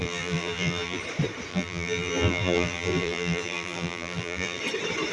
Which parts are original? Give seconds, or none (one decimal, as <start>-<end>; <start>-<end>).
1.0-1.5; 4.6-5.1